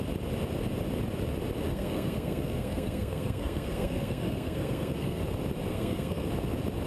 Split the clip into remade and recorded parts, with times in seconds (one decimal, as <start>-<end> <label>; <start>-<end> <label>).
0.0-1.7 recorded; 1.7-5.2 remade; 5.2-5.7 recorded; 5.7-6.3 remade; 6.3-6.9 recorded

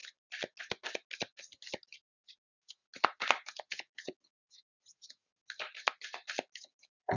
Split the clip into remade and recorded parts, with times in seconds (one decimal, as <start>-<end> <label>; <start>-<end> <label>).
0.0-2.4 recorded; 2.4-2.8 remade; 2.8-3.7 recorded; 3.7-5.2 remade; 5.2-6.6 recorded; 6.6-7.2 remade

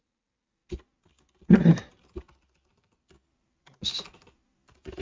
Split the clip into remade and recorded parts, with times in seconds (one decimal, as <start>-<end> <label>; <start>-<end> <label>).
0.0-5.0 recorded

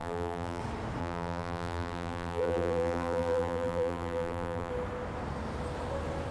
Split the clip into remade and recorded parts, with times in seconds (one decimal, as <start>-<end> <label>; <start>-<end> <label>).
0.0-0.6 remade; 0.6-1.0 recorded; 1.0-4.7 remade; 4.7-6.3 recorded

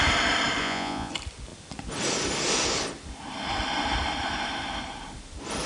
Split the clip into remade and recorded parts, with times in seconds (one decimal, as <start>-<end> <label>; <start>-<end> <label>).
0.0-0.6 recorded; 0.6-1.1 remade; 1.1-5.7 recorded

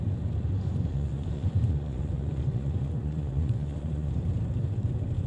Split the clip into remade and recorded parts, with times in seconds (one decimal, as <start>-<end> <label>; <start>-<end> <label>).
0.0-0.9 recorded; 0.9-4.1 remade; 4.1-5.3 recorded

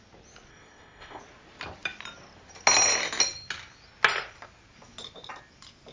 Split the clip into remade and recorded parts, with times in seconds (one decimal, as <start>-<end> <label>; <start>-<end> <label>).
0.0-0.5 recorded; 0.5-1.2 remade; 1.2-5.9 recorded

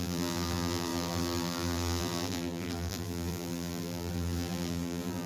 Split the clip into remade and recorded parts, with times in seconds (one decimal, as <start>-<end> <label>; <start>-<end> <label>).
0.0-5.3 remade